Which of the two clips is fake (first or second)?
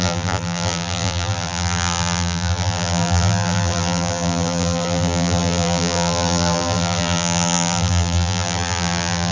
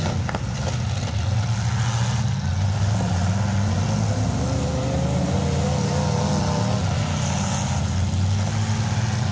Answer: first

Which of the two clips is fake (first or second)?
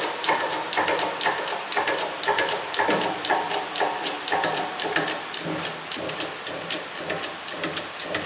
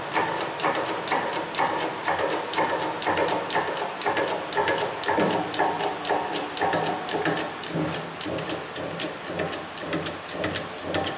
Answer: first